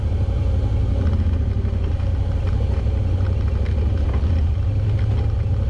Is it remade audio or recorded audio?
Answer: recorded